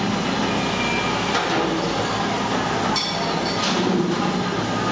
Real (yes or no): yes